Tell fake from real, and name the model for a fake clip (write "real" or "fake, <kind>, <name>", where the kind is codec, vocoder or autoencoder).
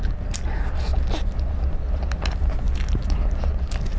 real